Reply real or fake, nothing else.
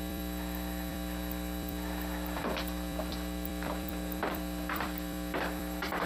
fake